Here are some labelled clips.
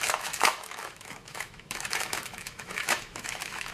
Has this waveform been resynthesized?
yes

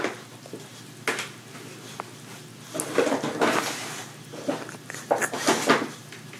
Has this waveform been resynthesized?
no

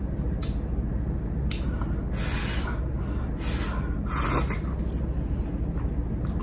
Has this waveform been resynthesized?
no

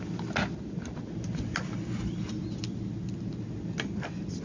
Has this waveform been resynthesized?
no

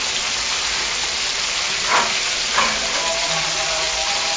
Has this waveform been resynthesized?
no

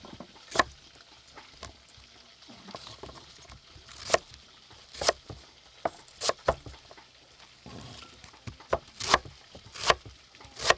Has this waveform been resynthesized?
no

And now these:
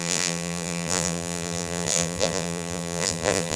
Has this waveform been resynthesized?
yes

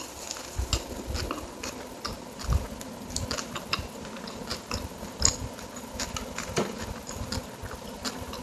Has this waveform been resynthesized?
no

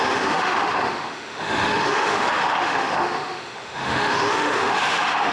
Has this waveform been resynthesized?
yes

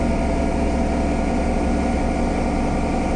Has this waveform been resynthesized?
no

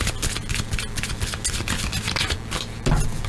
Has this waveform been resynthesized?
no